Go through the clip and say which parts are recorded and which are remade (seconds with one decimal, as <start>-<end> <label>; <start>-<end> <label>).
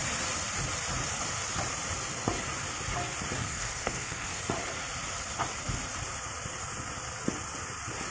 0.0-3.4 recorded; 3.4-4.4 remade; 4.4-8.1 recorded